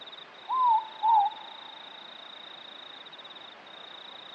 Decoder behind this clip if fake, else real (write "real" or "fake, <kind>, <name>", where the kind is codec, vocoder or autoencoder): real